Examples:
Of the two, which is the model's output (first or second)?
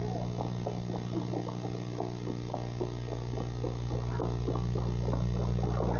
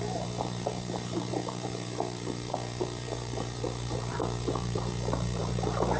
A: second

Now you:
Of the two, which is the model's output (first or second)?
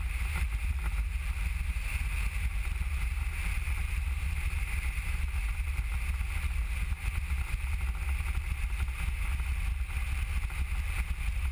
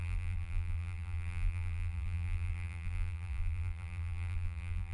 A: second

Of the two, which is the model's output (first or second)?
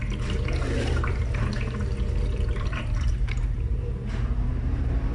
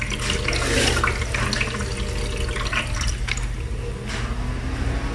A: first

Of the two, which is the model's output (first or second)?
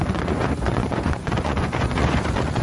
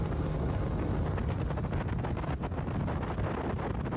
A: first